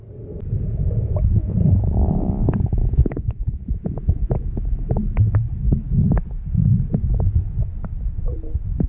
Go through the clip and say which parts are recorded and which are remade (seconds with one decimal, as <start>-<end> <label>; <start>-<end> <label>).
0.0-0.7 recorded; 0.7-4.5 remade; 4.5-8.9 recorded